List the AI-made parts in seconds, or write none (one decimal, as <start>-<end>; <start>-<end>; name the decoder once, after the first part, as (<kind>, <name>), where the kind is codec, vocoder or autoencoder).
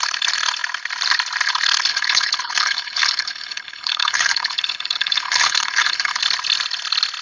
1.9-6.2 (codec, HILCodec)